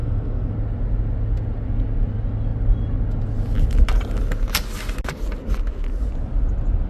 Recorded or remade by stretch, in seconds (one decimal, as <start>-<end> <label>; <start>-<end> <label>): 0.0-0.5 remade; 0.5-6.9 recorded